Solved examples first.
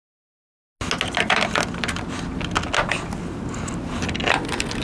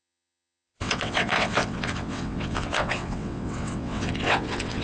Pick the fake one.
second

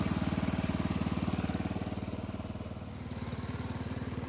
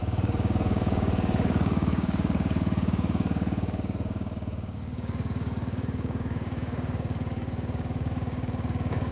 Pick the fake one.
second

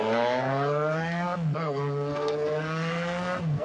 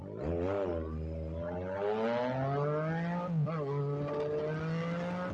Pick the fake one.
first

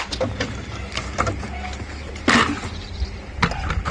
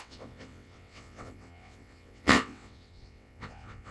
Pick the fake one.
second